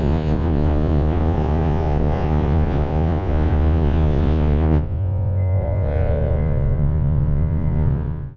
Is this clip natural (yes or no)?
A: no